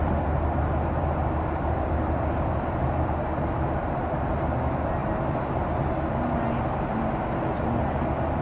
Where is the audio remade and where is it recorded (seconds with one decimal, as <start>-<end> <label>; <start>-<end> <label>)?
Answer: 0.0-4.0 remade; 4.0-8.4 recorded